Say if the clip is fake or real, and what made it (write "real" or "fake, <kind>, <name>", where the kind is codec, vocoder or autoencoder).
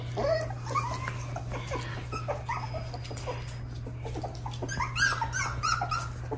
real